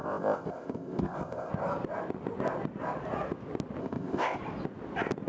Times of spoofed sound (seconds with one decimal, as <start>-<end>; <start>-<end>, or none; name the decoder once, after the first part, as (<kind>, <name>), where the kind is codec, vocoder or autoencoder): 0.0-1.5 (codec, ZipCodec); 3.8-4.4